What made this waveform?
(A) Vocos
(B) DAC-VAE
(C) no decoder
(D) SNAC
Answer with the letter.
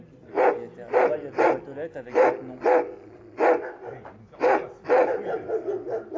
C